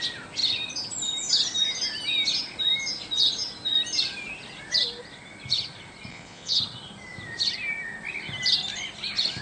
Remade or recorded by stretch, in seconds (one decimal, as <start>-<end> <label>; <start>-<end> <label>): 0.0-6.1 recorded; 6.1-6.6 remade; 6.6-9.4 recorded